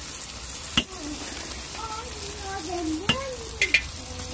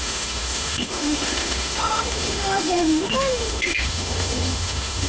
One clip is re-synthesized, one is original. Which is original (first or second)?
first